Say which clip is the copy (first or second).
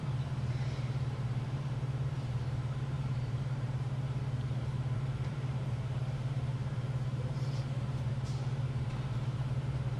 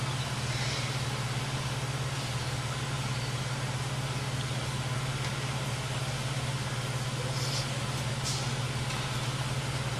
first